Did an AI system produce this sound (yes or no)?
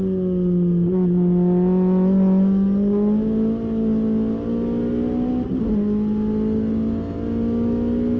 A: no